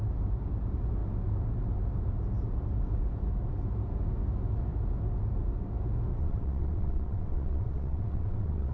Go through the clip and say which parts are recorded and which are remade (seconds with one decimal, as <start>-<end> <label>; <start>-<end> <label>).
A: 0.0-6.1 recorded; 6.1-8.7 remade